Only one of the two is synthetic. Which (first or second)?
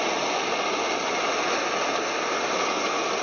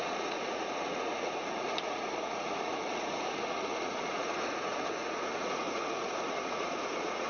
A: second